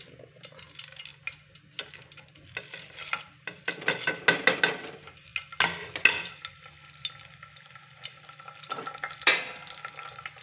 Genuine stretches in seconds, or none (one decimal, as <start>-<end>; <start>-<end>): 0.0-10.4